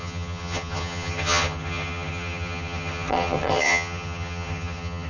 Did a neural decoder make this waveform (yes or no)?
yes